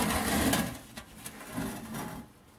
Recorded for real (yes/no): yes